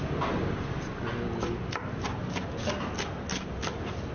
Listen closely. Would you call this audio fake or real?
real